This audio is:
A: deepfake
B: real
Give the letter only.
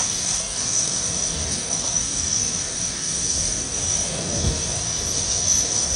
A